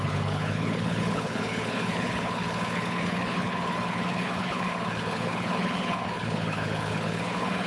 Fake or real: fake